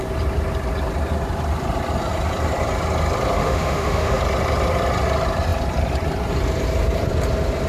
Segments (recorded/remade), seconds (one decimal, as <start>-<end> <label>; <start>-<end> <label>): 0.0-3.4 recorded; 3.4-4.2 remade; 4.2-7.7 recorded

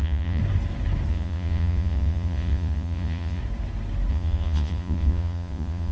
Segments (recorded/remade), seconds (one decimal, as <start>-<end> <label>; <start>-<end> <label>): 0.0-0.4 remade; 0.4-1.1 recorded; 1.1-3.4 remade; 3.4-4.1 recorded; 4.1-5.9 remade

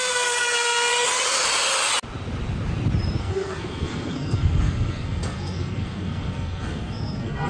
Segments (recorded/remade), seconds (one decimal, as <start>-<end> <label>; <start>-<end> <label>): 0.0-0.9 remade; 0.9-3.2 recorded; 3.2-7.5 remade

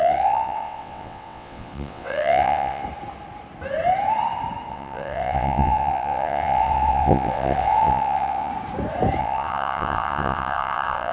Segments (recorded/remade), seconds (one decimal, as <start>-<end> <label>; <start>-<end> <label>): 0.0-2.8 remade; 2.8-4.7 recorded; 4.7-8.5 remade; 8.5-9.2 recorded; 9.2-11.1 remade

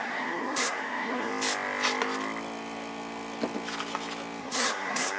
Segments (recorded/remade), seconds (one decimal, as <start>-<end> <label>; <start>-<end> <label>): 0.0-1.3 remade; 1.3-4.4 recorded; 4.4-5.2 remade

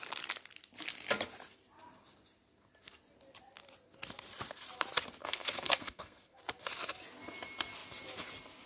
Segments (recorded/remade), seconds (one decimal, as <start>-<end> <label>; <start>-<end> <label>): 0.0-5.2 recorded; 5.2-6.4 remade; 6.4-8.7 recorded

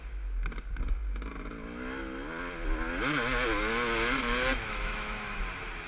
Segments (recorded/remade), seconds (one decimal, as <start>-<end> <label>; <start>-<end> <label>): 0.0-4.6 recorded; 4.6-5.4 remade; 5.4-5.9 recorded

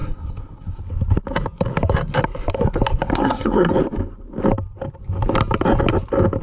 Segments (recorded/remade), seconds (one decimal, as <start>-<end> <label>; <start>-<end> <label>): 0.0-0.8 remade; 0.8-3.1 recorded; 3.1-3.7 remade; 3.7-6.4 recorded